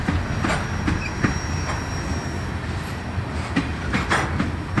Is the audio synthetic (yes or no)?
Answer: no